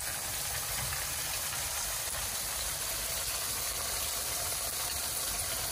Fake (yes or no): yes